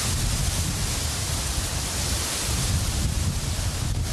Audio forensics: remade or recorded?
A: recorded